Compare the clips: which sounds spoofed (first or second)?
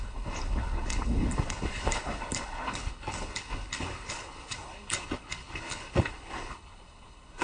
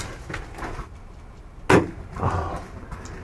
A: first